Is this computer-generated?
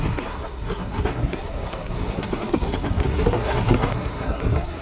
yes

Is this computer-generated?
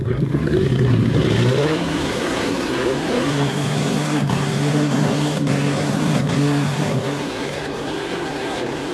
yes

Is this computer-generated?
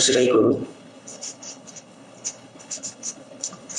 yes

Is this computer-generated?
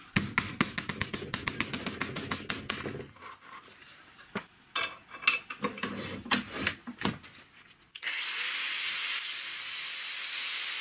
no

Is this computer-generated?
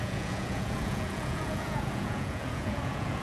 yes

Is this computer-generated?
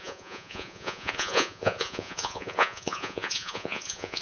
yes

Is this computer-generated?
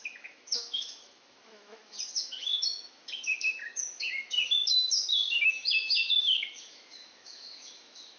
yes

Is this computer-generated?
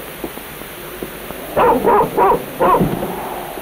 no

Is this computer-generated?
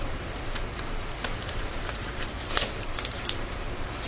yes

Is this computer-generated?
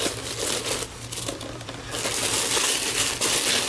no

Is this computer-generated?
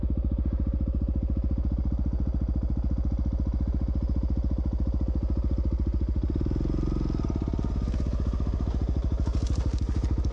no